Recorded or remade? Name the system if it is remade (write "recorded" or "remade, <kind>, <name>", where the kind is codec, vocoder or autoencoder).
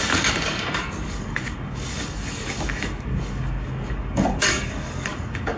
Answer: remade, codec, DAC